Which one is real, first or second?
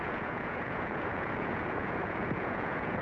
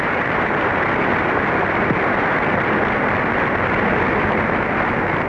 second